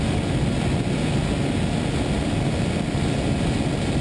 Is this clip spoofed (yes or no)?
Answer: no